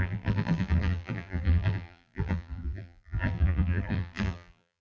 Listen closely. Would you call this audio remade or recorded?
remade